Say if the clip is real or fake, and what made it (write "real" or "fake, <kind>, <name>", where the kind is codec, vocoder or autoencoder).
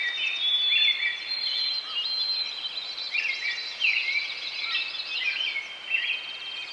real